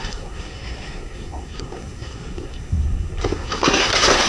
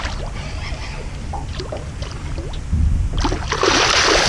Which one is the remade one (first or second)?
first